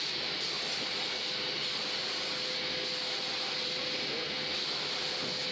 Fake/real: real